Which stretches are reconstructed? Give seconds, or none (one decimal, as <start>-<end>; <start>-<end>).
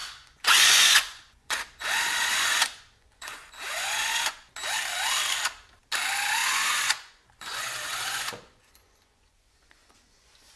0.0-4.5; 6.4-10.6